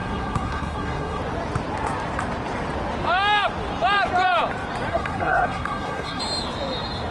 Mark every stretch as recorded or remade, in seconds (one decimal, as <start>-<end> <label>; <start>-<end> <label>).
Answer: 0.0-1.2 remade; 1.2-4.9 recorded; 4.9-6.2 remade; 6.2-7.1 recorded